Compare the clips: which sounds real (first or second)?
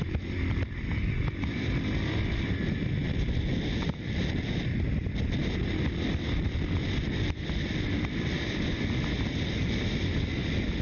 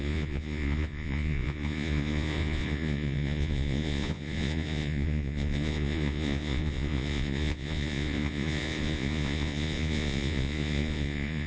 first